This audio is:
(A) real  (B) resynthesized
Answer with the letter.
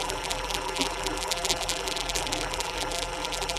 B